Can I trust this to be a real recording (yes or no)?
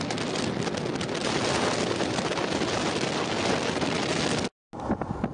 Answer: yes